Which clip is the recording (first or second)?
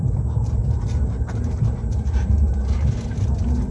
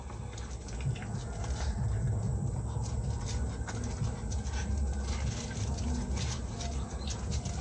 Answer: second